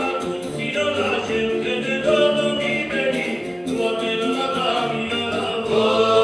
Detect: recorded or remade remade